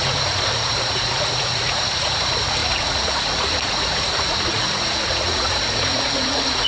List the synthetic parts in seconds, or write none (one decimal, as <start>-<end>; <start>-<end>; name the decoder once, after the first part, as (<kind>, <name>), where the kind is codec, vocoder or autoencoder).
0.0-6.7 (vocoder, Vocos)